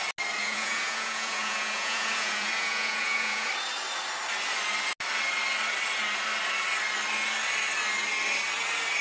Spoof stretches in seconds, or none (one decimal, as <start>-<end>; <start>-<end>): 0.4-3.5